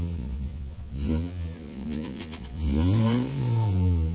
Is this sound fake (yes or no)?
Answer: yes